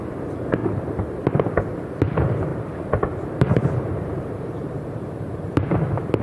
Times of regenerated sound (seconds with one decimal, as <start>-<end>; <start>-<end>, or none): 0.6-1.2; 2.5-6.2